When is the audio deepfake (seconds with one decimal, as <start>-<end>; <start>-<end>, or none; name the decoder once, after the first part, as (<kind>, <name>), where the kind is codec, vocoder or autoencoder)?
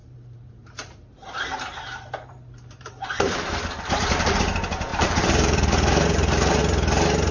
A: 0.0-4.4 (vocoder, BigVGAN v2); 4.9-6.6